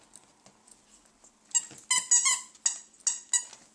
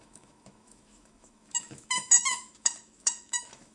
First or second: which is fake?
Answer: second